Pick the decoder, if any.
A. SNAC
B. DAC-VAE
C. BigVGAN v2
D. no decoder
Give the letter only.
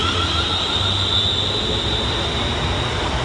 D